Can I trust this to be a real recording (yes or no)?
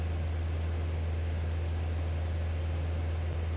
yes